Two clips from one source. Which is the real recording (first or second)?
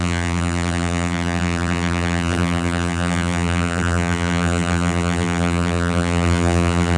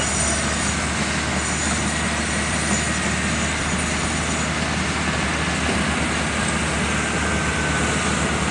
second